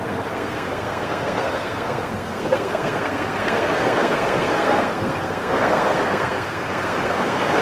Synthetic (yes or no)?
yes